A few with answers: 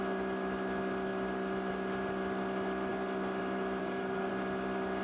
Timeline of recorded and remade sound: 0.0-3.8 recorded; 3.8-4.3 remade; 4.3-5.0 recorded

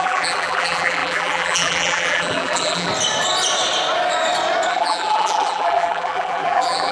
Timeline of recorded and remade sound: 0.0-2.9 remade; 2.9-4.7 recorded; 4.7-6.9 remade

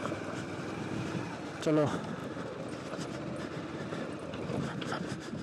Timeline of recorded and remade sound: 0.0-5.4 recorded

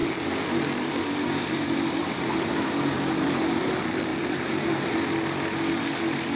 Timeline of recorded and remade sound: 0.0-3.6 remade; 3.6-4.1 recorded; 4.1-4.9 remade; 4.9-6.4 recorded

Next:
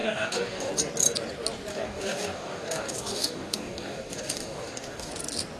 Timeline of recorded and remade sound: 0.0-0.7 remade; 0.7-1.7 recorded; 1.7-5.1 remade; 5.1-5.6 recorded

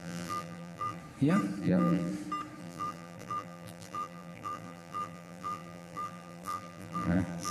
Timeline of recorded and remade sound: 0.0-1.0 remade; 1.0-1.6 recorded; 1.6-2.1 remade; 2.1-2.6 recorded; 2.6-7.5 remade